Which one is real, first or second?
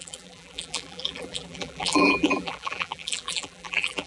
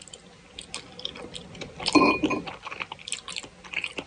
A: second